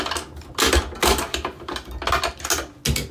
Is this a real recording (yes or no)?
yes